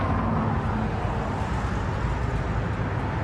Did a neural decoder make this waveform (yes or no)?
no